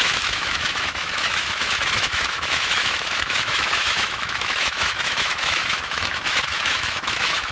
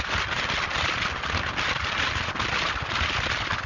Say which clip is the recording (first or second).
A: second